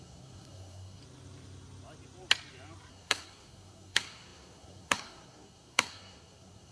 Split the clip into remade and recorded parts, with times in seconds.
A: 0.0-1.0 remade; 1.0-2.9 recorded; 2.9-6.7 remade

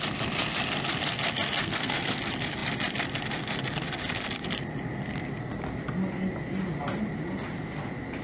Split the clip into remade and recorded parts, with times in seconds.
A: 0.0-1.6 recorded; 1.6-2.2 remade; 2.2-8.2 recorded

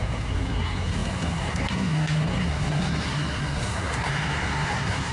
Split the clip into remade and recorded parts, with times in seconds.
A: 0.0-5.1 remade

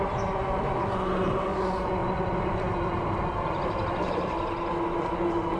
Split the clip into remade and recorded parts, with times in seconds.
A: 0.0-5.6 recorded